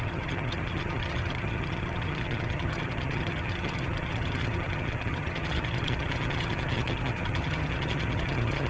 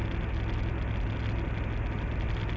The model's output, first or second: first